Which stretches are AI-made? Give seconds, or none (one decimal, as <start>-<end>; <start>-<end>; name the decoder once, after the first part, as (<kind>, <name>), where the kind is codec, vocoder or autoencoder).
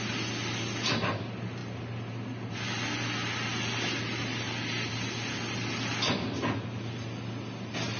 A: none